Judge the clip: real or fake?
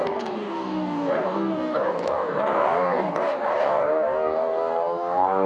fake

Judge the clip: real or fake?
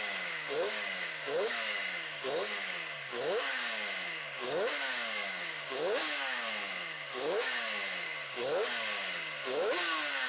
fake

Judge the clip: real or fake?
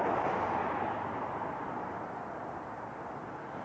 real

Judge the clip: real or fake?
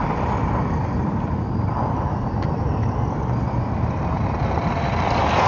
real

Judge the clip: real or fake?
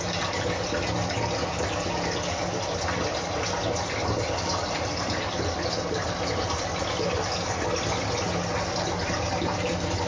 real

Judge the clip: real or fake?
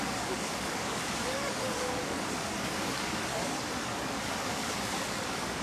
fake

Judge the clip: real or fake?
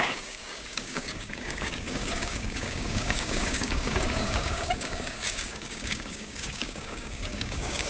fake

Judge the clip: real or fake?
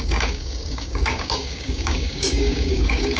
fake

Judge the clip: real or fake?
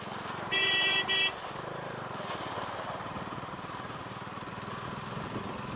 real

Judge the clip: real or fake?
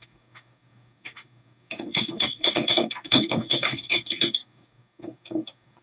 fake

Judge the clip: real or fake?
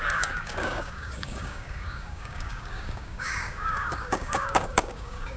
fake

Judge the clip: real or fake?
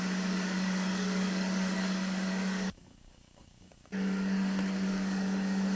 fake